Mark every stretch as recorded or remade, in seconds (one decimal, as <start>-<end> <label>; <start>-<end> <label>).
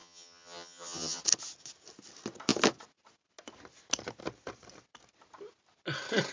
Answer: 0.0-1.2 remade; 1.2-6.3 recorded